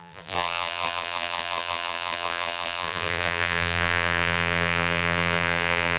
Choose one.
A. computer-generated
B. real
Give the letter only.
A